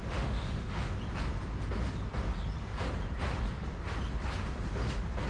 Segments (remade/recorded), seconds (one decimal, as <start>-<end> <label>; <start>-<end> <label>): 0.0-1.0 remade; 1.0-5.3 recorded